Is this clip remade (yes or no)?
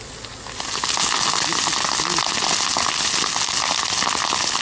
no